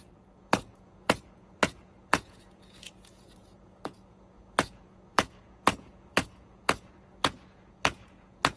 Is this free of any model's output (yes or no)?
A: no